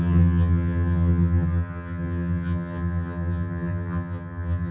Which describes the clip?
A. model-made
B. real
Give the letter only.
A